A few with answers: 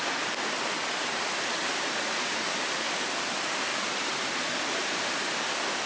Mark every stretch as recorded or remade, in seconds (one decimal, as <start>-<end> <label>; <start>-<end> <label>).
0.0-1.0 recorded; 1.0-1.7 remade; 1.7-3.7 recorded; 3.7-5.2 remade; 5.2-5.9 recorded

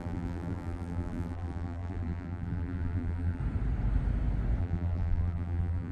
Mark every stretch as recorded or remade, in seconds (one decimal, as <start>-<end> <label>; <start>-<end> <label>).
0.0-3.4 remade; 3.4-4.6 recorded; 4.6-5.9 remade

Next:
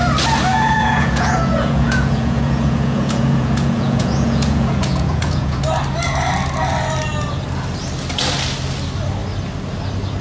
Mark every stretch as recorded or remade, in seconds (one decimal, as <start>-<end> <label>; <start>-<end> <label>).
0.0-0.5 recorded; 0.5-5.6 remade; 5.6-10.2 recorded

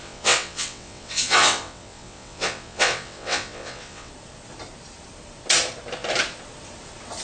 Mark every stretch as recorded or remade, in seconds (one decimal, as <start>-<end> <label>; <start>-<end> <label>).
0.0-4.1 remade; 4.1-7.2 recorded

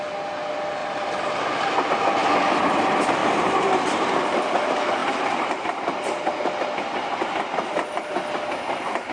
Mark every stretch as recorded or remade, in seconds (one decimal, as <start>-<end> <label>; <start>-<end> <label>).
0.0-0.8 recorded; 0.8-2.2 remade; 2.2-3.2 recorded; 3.2-4.6 remade; 4.6-9.1 recorded

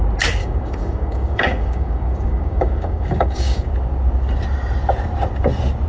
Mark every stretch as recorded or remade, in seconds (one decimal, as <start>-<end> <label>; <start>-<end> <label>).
0.0-0.4 recorded; 0.4-3.7 remade; 3.7-5.9 recorded

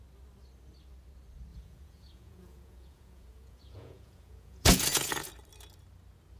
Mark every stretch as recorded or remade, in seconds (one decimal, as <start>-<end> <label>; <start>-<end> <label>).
0.0-1.5 recorded; 1.5-5.3 remade; 5.3-6.4 recorded

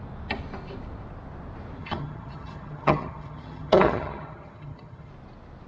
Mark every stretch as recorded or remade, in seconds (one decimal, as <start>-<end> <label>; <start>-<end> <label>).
0.0-1.8 recorded; 1.8-5.1 remade; 5.1-5.7 recorded